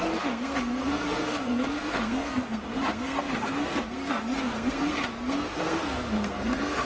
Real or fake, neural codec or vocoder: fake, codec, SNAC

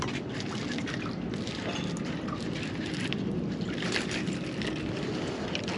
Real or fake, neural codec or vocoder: real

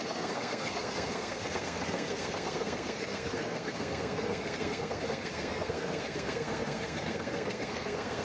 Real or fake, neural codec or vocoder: fake, codec, SNAC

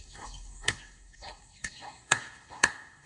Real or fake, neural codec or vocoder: fake, codec, SNAC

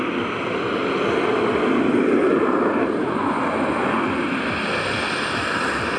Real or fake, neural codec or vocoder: real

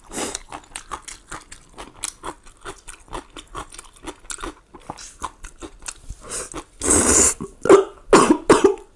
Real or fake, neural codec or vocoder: real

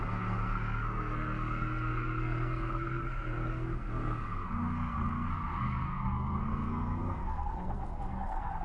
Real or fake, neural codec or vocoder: fake, codec, SNAC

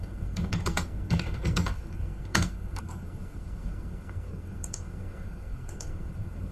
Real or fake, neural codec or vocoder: fake, codec, SNAC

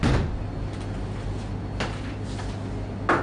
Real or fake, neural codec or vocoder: real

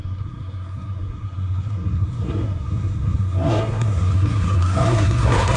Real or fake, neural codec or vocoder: fake, codec, SNAC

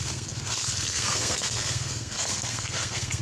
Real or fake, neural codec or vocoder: fake, codec, SNAC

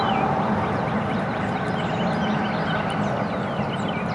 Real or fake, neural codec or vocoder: real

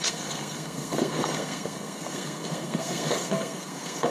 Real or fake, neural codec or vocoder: fake, codec, SNAC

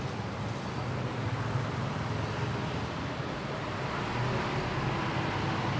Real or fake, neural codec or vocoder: real